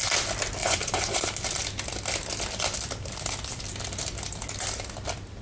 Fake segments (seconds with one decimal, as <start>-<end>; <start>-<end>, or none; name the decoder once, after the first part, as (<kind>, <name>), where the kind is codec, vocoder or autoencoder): 0.6-1.2 (vocoder, Vocos)